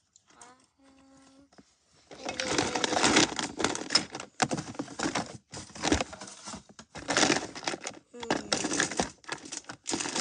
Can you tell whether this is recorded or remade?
recorded